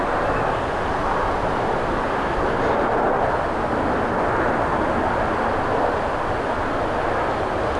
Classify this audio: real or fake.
real